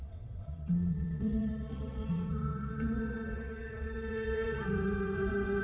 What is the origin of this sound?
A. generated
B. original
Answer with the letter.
A